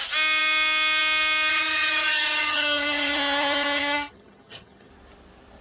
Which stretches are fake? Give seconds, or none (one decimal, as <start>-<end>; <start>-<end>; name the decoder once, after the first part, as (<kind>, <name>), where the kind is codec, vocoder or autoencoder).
1.5-4.9 (vocoder, HiFi-GAN)

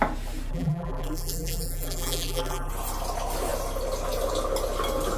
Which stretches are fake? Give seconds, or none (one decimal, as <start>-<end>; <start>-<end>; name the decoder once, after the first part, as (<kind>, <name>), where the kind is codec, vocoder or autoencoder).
0.5-2.7 (vocoder, BigVGAN v2)

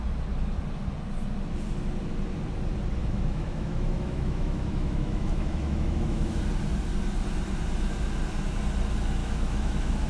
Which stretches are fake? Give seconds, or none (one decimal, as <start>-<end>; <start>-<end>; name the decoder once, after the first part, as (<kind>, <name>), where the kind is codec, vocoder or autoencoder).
3.0-6.4 (autoencoder, DAC-VAE); 9.2-10.1

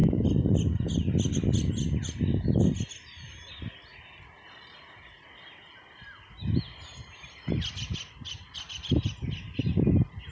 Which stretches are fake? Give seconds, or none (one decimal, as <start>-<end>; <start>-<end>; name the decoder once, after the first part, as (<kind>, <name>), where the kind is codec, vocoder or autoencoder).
none

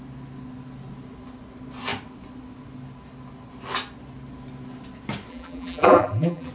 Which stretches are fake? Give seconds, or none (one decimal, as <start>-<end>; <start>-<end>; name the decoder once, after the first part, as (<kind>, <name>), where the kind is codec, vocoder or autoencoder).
5.3-6.5 (vocoder, BigVGAN v2)

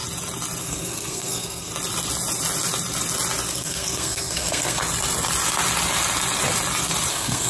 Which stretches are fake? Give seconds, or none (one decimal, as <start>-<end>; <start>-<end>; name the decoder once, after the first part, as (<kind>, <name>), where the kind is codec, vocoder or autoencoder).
0.6-1.7 (codec, SNAC); 3.5-4.8; 7.1-7.5

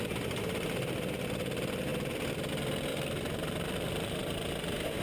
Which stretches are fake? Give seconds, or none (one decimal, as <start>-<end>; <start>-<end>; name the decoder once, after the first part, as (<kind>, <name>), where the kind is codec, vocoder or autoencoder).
2.9-4.5 (vocoder, BigVGAN v2)

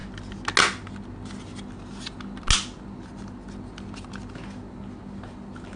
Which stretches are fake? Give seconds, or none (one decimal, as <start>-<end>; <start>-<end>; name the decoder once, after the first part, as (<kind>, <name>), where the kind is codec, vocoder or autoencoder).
none